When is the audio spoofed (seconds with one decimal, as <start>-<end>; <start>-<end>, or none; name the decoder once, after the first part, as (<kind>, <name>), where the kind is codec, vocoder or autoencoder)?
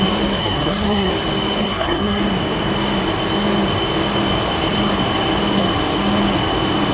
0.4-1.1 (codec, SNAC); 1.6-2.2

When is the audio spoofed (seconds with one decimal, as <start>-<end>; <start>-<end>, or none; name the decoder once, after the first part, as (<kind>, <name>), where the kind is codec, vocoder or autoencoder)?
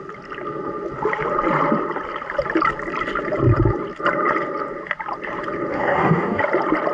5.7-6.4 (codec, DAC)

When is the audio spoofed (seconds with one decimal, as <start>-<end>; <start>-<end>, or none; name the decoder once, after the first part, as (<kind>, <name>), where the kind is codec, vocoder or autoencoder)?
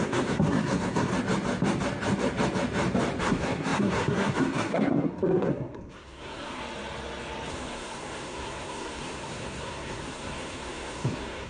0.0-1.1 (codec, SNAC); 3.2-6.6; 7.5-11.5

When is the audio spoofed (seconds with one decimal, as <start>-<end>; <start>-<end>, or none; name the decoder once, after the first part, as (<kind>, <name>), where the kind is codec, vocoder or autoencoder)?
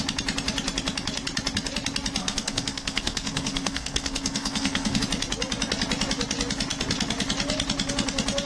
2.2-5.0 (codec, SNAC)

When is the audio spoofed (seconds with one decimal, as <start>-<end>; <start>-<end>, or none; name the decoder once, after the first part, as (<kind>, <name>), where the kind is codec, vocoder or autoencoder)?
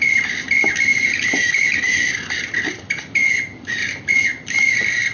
none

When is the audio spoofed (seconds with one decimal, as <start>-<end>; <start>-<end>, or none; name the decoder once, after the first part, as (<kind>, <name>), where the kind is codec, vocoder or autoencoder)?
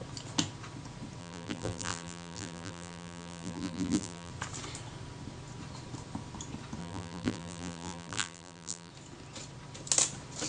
1.2-4.3 (vocoder, BigVGAN v2); 6.8-8.9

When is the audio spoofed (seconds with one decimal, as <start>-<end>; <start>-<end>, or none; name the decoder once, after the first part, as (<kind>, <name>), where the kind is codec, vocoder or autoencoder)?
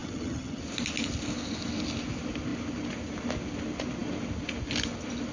0.0-0.6 (vocoder, HiFi-GAN)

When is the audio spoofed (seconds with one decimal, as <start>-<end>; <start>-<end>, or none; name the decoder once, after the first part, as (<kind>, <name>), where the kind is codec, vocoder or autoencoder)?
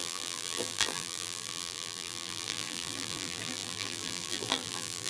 0.0-5.1 (vocoder, BigVGAN v2)